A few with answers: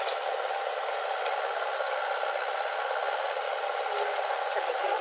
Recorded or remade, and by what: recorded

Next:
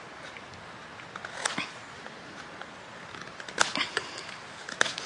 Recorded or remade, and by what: recorded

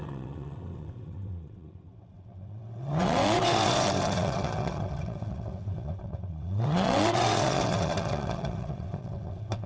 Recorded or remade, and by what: remade, vocoder, WaveNeXt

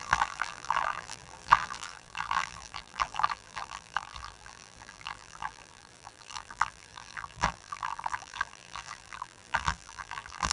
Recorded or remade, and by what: remade, vocoder, BigVGAN v2